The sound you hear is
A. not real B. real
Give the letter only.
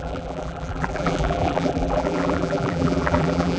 A